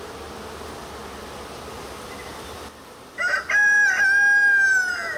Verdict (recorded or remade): recorded